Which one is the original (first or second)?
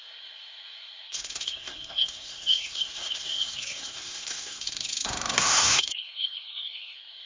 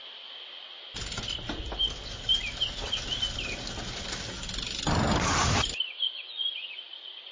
second